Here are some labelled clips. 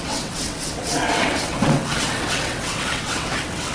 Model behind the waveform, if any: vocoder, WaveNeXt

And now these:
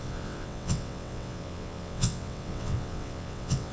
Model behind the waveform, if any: vocoder, WaveNeXt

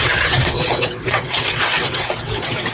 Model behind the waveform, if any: vocoder, WaveNeXt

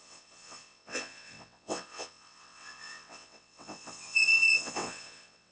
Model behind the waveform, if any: vocoder, WaveNeXt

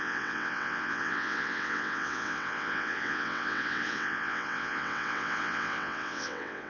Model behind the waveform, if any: vocoder, WaveNeXt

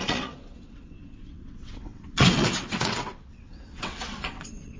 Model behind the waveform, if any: vocoder, WaveNeXt